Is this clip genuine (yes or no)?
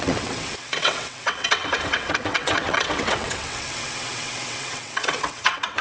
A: no